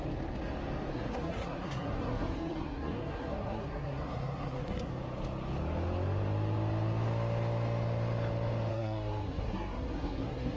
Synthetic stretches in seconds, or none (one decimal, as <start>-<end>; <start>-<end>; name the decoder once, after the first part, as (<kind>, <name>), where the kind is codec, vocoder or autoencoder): 0.9-4.9 (codec, SNAC); 8.7-10.6

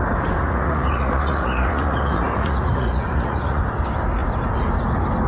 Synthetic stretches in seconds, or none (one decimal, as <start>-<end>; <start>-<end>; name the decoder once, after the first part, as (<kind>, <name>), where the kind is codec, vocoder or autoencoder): 0.4-3.6 (vocoder, Vocos)

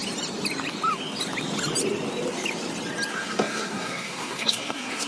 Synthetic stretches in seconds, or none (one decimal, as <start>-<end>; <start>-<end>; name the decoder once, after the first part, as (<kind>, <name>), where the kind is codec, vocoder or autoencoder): 3.1-5.1 (codec, SNAC)

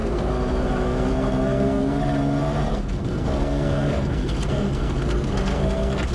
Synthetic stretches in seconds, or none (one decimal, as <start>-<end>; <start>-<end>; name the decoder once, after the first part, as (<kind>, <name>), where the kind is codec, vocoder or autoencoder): 0.0-2.0 (codec, SNAC); 2.7-6.1

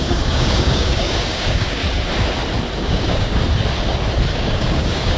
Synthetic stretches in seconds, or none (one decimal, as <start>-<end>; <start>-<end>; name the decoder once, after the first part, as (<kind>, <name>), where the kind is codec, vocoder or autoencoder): 0.0-1.8 (codec, DAC); 2.8-3.4; 4.3-5.2